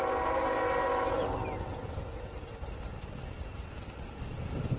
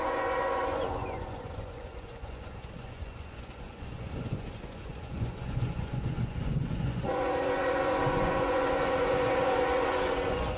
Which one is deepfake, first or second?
second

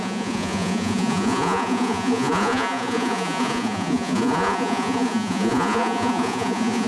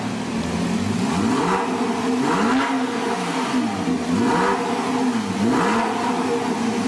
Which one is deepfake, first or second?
first